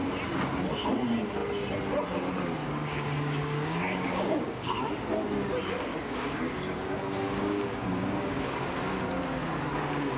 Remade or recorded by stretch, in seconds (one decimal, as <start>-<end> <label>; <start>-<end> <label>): 0.0-2.6 recorded; 2.6-4.9 remade; 4.9-5.9 recorded; 5.9-8.6 remade; 8.6-10.2 recorded

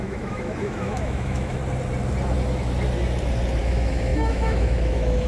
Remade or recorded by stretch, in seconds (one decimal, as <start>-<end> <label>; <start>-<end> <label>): 0.0-1.6 remade; 1.6-3.6 recorded; 3.6-5.3 remade

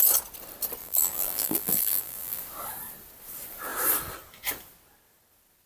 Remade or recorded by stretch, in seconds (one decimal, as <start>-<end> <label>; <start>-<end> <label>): 0.0-0.8 recorded; 0.8-2.4 remade; 2.4-5.7 recorded

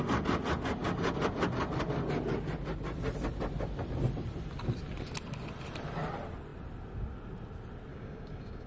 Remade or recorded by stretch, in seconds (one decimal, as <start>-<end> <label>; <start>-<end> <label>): 0.0-7.9 recorded; 7.9-8.7 remade

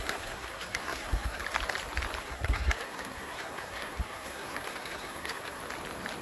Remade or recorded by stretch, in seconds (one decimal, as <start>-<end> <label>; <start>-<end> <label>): 0.0-1.4 remade; 1.4-2.2 recorded; 2.2-5.6 remade; 5.6-6.2 recorded

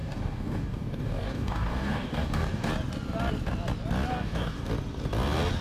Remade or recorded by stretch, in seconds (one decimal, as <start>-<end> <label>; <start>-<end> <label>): 0.0-2.7 remade; 2.7-4.1 recorded; 4.1-4.7 remade; 4.7-5.6 recorded